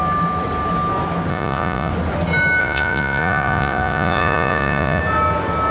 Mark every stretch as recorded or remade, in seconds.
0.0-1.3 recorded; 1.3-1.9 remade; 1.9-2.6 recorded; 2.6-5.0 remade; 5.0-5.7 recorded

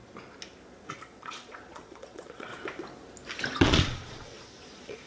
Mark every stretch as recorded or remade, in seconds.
0.0-0.9 recorded; 0.9-2.5 remade; 2.5-3.6 recorded; 3.6-5.1 remade

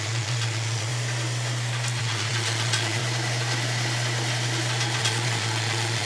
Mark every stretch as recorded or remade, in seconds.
0.0-0.9 remade; 0.9-2.0 recorded; 2.0-3.0 remade; 3.0-5.0 recorded; 5.0-6.1 remade